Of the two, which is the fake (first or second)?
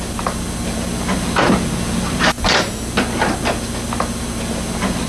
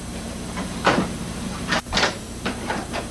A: second